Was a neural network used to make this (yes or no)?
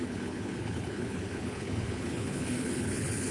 yes